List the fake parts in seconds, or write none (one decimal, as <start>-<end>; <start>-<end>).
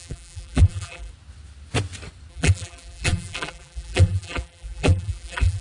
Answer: 0.0-1.1; 2.3-5.6